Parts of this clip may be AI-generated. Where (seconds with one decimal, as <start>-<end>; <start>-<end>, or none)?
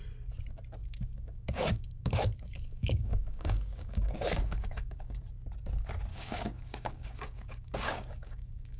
0.8-5.2; 6.1-8.8